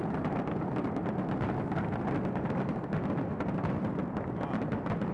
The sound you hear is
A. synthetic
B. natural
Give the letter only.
B